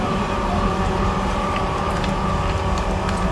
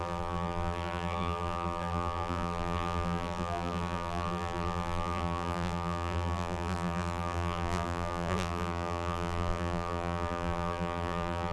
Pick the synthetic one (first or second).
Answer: second